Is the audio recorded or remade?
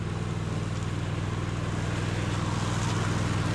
recorded